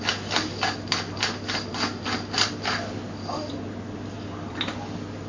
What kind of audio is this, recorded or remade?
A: recorded